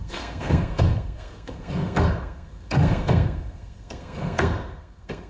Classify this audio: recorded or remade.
remade